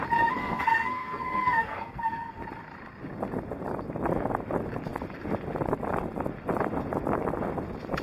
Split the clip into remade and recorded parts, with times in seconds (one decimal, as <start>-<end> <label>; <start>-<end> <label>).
0.0-0.4 recorded; 0.4-2.4 remade; 2.4-8.0 recorded